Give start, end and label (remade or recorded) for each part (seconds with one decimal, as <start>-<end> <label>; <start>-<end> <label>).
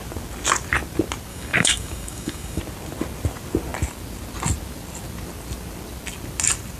0.0-1.3 recorded; 1.3-2.6 remade; 2.6-6.8 recorded